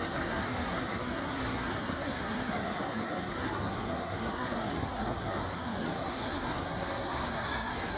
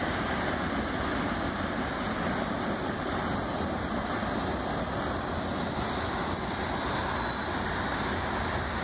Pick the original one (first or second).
second